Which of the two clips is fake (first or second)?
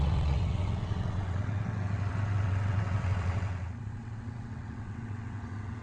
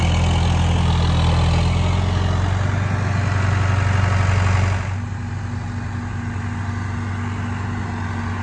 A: first